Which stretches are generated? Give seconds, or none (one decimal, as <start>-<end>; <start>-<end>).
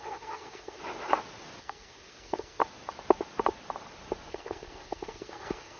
0.0-0.8; 1.6-2.6; 4.3-5.8